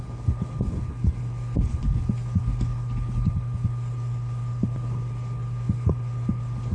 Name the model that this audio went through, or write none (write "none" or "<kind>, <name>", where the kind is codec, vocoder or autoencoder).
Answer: codec, HILCodec